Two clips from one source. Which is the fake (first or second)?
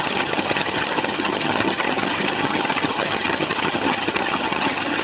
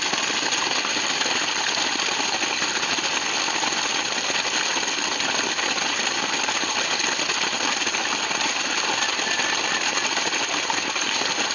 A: first